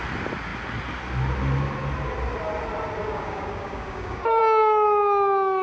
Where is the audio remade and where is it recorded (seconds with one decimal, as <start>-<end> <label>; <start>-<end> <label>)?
0.0-3.0 recorded; 3.0-4.4 remade; 4.4-5.6 recorded